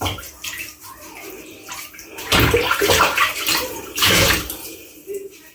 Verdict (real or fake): fake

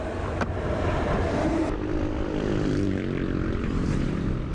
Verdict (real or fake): fake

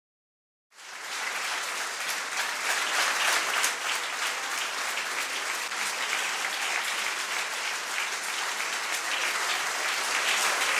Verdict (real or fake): real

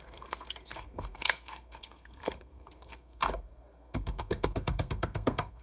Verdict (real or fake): fake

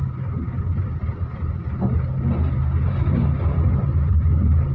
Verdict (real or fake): real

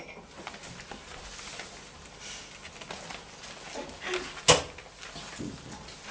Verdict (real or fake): real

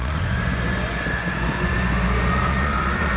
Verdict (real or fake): fake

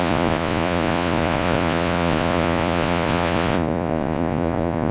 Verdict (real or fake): fake